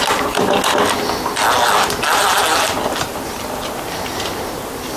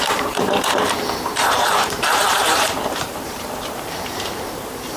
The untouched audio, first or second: first